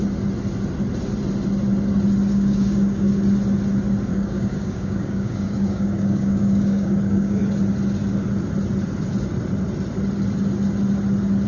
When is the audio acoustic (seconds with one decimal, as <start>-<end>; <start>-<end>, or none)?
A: 0.0-2.3; 3.2-4.1; 7.4-11.5